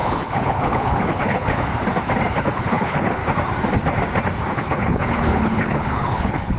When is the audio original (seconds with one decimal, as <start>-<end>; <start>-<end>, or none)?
1.7-2.3; 3.2-4.5